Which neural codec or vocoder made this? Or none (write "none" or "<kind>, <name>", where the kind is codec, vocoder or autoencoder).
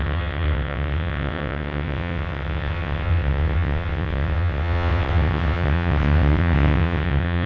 vocoder, WaveNeXt